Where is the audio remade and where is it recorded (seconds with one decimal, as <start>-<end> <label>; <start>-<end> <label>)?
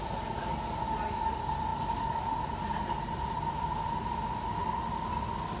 0.0-5.6 recorded